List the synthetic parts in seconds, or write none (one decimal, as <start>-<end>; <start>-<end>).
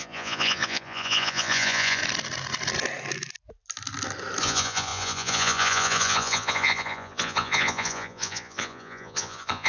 0.0-2.0; 4.4-9.7